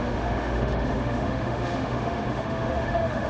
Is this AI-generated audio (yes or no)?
yes